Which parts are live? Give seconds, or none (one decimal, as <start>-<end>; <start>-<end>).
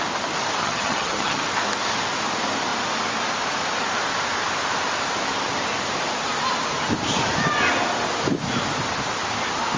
0.0-0.6; 1.4-9.8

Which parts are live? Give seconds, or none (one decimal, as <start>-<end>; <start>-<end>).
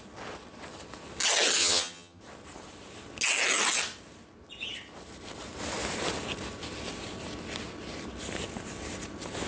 0.0-1.6; 2.2-9.5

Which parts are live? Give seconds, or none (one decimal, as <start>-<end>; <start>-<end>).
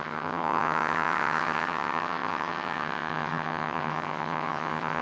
none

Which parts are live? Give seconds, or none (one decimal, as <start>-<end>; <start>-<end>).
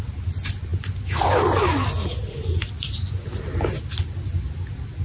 0.0-5.0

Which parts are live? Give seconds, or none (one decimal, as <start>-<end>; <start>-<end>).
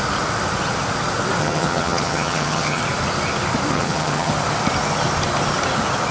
0.0-1.4; 2.8-3.7; 4.3-6.1